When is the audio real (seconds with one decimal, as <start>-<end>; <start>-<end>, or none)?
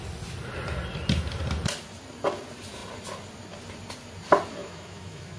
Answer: 0.0-4.6